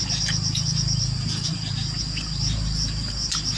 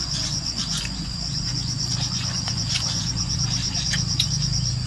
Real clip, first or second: first